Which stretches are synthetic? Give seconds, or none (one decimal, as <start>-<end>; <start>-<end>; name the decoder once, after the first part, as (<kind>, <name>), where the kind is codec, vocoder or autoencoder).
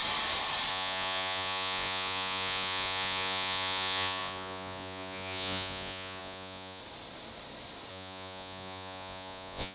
0.7-6.8 (vocoder, Vocos); 7.9-9.7